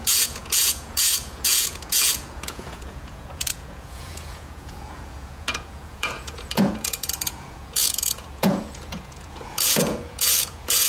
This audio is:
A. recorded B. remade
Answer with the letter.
B